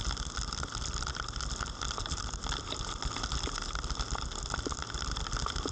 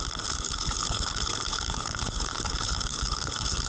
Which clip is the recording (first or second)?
first